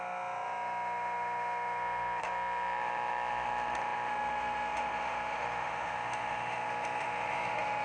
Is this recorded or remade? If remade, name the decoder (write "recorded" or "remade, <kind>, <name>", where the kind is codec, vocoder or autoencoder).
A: remade, autoencoder, DAC-VAE